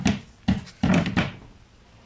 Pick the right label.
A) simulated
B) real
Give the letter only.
B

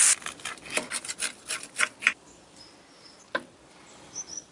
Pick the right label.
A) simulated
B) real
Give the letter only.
B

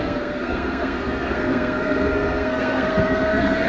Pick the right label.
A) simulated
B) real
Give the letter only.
A